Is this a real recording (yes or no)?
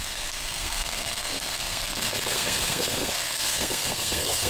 no